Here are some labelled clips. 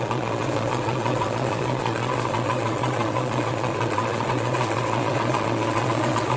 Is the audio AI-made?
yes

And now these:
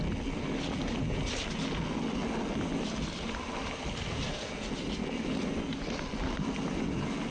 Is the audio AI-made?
no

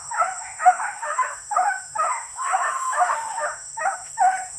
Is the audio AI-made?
yes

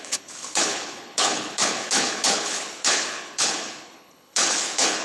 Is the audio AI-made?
yes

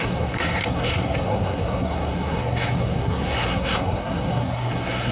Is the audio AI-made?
yes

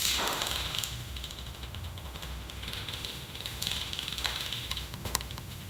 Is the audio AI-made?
yes